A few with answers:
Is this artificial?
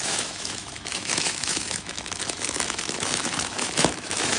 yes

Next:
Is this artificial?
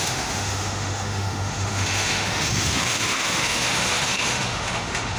yes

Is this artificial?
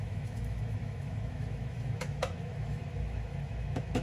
yes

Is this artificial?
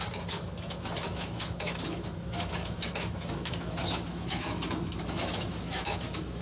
yes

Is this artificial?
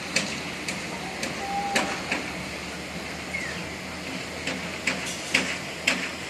no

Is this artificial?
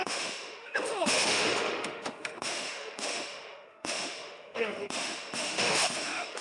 yes